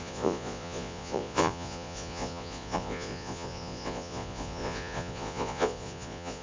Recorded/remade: remade